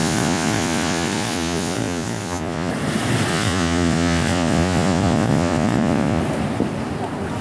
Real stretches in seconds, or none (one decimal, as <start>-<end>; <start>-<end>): 2.7-3.3; 6.2-7.4